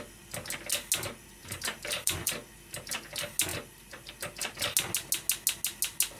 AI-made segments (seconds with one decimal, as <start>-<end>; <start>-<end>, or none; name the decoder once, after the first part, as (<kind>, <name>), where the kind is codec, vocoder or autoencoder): 1.4-2.3 (vocoder, BigVGAN v2); 3.5-4.1